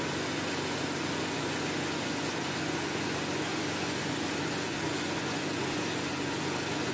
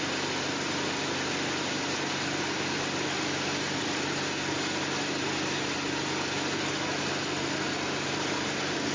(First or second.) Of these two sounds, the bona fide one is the second